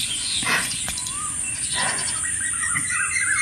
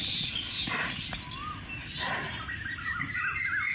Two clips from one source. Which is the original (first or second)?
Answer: second